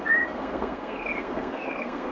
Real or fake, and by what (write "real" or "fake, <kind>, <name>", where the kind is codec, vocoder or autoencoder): fake, codec, SNAC